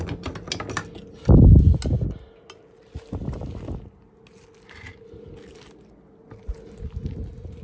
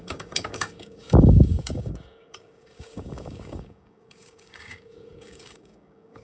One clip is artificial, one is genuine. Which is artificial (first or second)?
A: second